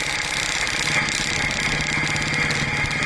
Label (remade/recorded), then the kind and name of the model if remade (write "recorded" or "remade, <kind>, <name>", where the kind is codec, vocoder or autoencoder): recorded